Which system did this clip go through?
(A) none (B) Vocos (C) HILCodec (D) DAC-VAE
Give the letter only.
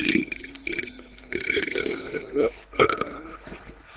C